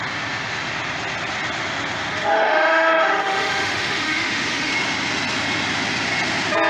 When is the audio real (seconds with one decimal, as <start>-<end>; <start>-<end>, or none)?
0.0-2.1; 4.7-6.7